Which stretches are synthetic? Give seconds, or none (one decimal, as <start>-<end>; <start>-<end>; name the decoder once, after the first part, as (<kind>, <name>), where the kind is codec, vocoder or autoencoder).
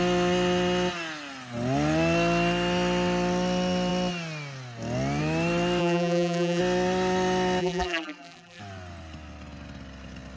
5.8-6.6 (vocoder, BigVGAN v2); 7.6-8.6